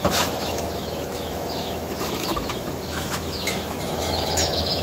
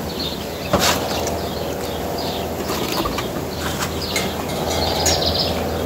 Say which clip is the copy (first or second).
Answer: first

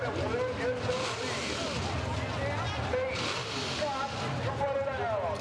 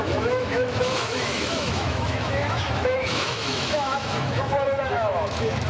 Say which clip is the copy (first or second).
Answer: second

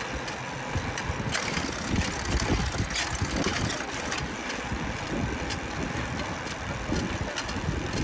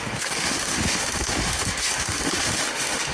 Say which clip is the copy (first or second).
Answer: second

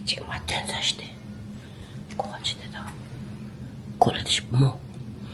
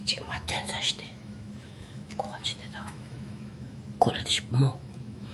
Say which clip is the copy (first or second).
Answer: second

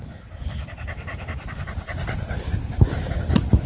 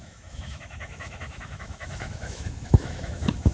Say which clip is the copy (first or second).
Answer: second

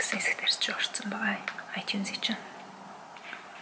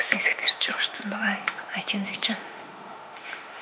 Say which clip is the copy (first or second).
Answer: second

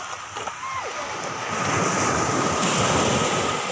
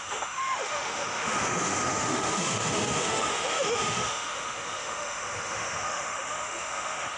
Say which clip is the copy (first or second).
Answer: second